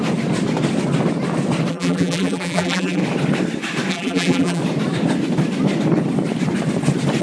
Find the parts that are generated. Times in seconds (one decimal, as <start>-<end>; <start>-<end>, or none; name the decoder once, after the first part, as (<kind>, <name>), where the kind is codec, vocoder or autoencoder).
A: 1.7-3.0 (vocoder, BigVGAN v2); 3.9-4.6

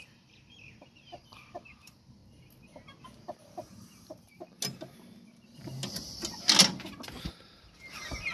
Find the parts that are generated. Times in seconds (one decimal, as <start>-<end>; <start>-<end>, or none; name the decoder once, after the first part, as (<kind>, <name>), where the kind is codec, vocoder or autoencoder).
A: 0.0-2.2 (vocoder, BigVGAN v2); 7.2-8.3

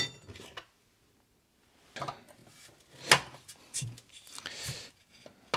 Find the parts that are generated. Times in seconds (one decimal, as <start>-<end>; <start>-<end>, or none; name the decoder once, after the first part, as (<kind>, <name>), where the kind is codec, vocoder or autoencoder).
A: none